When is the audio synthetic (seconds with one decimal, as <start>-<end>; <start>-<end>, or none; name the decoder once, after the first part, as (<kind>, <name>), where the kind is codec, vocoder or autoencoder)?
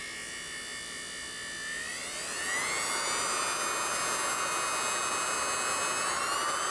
none